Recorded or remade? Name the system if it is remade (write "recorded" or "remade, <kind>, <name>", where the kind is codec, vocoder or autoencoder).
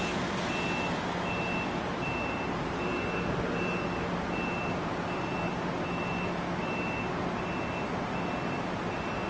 recorded